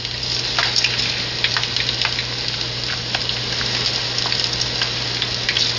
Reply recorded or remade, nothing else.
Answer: recorded